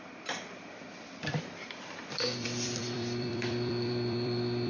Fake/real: fake